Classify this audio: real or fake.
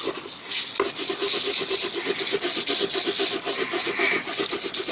real